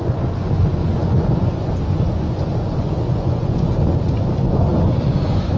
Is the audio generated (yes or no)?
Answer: yes